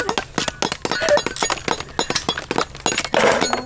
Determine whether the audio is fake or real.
real